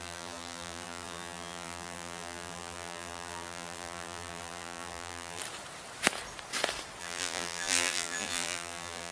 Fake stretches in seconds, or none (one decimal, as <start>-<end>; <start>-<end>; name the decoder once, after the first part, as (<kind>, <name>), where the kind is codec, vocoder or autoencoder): 0.0-5.4 (vocoder, BigVGAN v2); 7.0-9.1